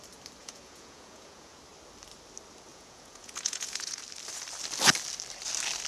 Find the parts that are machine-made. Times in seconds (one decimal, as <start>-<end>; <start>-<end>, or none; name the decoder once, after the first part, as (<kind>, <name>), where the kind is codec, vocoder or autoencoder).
0.4-1.6 (vocoder, Vocos); 2.7-4.0